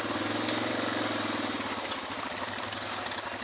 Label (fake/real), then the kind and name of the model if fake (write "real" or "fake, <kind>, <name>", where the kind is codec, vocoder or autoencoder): real